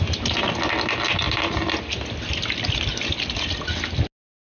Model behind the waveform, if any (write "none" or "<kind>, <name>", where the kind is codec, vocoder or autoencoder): none